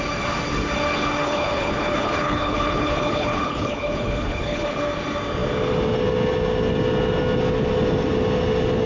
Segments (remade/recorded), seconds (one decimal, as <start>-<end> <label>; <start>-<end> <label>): 0.0-1.2 recorded; 1.2-4.8 remade; 4.8-8.9 recorded